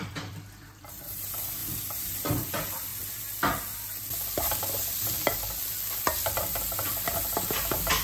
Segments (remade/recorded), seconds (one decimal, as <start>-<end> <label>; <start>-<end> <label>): 0.0-2.9 remade; 2.9-7.5 recorded; 7.5-8.0 remade